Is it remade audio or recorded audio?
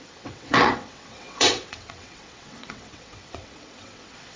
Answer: remade